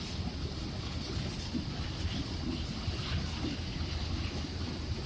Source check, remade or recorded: recorded